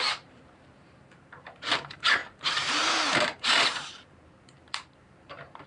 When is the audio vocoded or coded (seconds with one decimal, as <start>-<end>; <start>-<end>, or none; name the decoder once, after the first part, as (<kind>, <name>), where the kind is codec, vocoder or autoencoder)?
0.0-5.7 (vocoder, BigVGAN v2)